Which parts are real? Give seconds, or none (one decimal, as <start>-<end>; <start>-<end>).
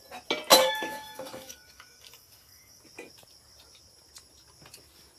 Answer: 0.0-0.5; 2.8-5.2